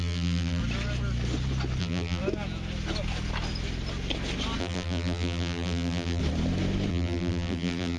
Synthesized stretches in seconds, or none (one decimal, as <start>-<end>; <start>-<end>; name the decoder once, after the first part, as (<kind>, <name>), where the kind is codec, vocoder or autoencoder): 0.0-0.6 (vocoder, BigVGAN v2); 1.8-2.2; 4.6-6.2; 6.9-8.0